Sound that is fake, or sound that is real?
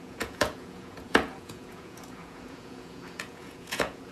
fake